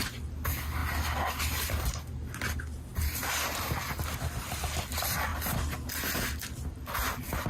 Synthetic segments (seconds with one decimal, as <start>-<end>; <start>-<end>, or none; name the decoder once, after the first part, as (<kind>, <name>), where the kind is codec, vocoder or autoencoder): none

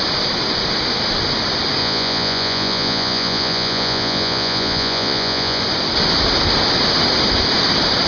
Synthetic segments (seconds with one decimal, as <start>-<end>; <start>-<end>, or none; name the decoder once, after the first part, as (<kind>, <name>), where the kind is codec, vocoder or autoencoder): 1.8-5.6 (vocoder, Vocos)

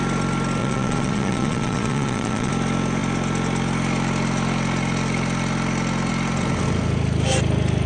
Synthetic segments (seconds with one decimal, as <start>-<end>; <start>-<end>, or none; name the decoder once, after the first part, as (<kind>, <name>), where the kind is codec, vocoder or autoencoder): 0.6-2.5 (vocoder, Vocos)

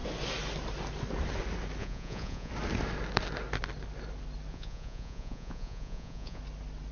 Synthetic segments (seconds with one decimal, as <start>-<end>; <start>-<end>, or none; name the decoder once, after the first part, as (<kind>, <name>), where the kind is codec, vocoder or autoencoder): 1.8-2.5 (vocoder, Vocos); 4.5-6.4

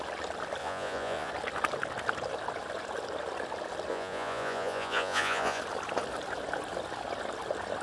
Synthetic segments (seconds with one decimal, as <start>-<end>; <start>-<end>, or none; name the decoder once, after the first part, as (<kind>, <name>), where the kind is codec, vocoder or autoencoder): 0.6-1.3 (vocoder, Vocos); 3.9-5.6